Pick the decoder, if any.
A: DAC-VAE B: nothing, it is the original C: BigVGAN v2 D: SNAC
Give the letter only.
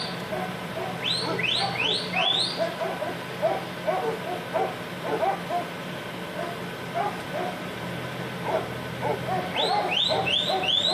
B